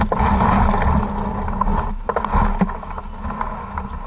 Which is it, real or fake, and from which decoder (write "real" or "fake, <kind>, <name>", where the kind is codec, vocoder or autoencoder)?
real